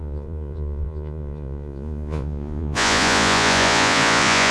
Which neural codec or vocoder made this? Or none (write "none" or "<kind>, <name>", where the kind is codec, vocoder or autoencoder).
vocoder, Vocos